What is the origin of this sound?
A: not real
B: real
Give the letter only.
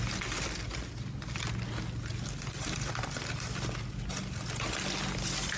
B